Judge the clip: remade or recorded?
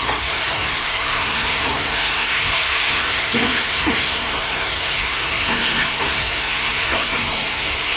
remade